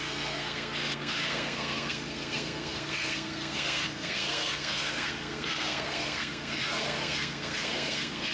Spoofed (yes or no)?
yes